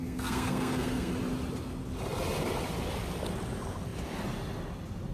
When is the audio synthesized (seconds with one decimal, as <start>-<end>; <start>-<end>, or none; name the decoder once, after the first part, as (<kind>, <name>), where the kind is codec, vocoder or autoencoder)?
0.0-1.1 (codec, SNAC)